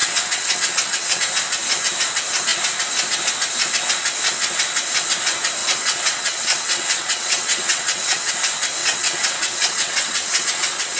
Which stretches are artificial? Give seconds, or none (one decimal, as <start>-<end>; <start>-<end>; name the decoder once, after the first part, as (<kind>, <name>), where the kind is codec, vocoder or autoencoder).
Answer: 0.0-1.2 (vocoder, WaveNeXt); 5.6-8.3; 8.8-11.0